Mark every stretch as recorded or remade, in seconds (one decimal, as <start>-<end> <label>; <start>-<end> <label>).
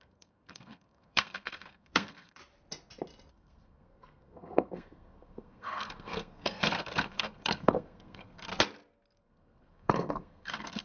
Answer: 0.0-2.4 remade; 2.4-3.3 recorded; 3.3-8.5 remade; 8.5-9.2 recorded; 9.2-10.8 remade